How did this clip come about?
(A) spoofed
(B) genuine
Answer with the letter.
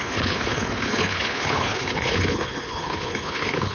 A